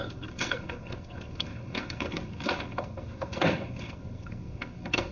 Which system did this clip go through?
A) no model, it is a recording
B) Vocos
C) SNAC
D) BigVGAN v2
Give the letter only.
C